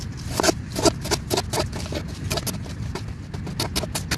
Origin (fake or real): real